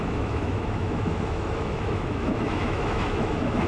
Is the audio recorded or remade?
remade